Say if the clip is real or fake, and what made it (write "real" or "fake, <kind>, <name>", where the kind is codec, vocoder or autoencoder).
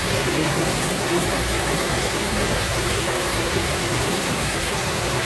fake, codec, SNAC